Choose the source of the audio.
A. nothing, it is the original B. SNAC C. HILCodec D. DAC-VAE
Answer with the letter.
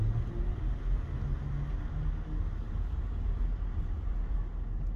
A